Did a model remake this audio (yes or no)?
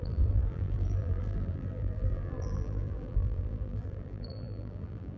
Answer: yes